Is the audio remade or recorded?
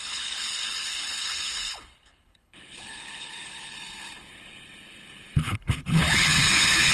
remade